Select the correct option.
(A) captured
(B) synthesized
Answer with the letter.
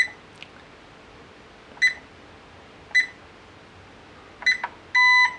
A